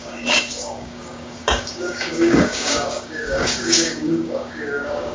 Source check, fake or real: fake